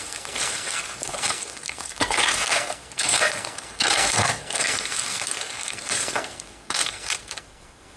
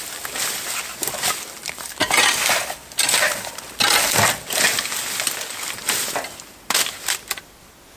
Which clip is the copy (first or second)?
first